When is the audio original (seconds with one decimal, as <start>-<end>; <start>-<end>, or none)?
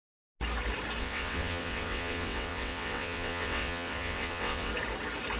0.0-1.0; 4.7-5.4